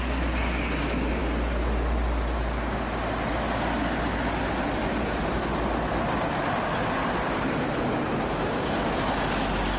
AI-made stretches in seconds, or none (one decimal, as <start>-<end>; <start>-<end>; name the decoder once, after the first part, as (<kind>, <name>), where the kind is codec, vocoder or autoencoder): none